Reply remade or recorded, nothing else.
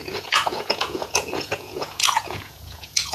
remade